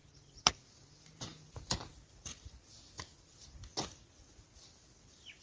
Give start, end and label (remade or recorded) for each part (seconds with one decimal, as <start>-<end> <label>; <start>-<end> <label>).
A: 0.0-5.4 recorded